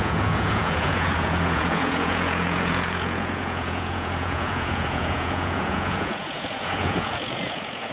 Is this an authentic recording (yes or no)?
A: no